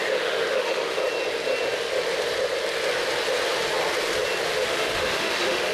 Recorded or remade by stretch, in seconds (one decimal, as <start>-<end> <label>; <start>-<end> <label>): 0.0-1.0 remade; 1.0-4.4 recorded; 4.4-5.7 remade